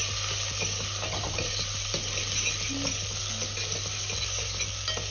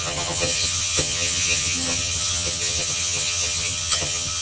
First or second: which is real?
first